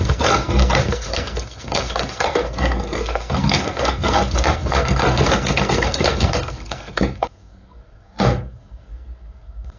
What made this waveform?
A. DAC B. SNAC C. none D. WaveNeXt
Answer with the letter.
B